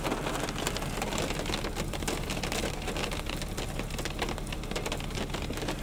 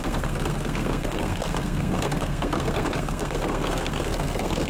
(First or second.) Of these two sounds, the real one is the first